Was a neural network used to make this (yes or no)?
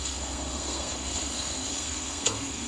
yes